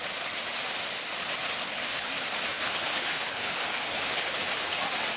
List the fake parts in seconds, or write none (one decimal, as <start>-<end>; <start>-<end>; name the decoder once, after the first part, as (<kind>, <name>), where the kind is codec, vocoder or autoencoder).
1.6-2.1 (codec, HILCodec); 2.5-4.8